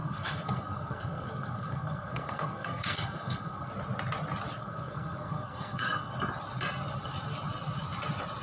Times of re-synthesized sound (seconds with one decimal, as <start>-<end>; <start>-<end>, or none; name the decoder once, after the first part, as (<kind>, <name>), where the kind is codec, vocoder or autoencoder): 0.0-3.7 (codec, SNAC); 4.6-6.1